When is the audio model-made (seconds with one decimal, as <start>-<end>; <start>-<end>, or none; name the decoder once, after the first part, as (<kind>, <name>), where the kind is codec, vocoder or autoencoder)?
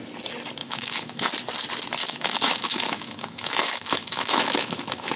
0.6-1.3 (autoencoder, DAC-VAE); 2.0-5.2